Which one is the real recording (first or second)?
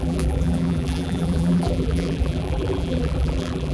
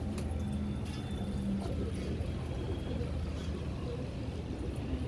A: second